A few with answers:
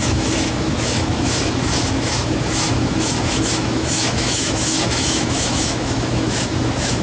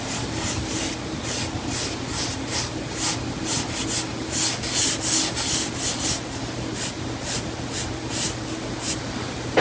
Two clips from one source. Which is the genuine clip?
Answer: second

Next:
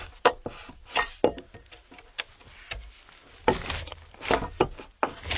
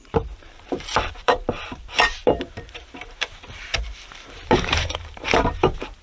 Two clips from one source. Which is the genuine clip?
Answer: first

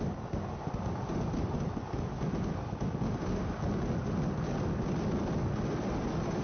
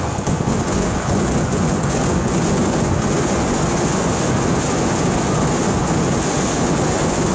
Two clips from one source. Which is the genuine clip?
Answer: first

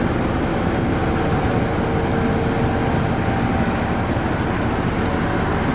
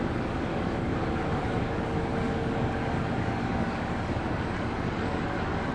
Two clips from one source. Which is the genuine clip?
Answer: first